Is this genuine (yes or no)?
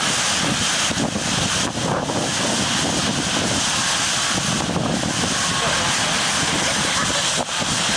yes